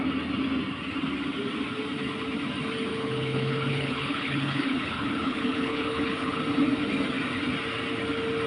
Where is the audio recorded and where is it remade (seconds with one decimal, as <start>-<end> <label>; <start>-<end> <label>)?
0.0-2.9 recorded; 2.9-6.4 remade; 6.4-8.5 recorded